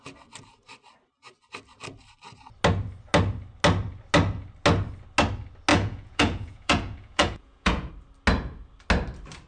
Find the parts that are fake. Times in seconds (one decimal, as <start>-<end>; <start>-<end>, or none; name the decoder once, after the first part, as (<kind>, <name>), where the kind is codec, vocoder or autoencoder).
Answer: 5.7-7.9 (vocoder, Vocos)